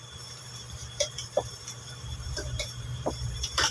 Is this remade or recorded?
remade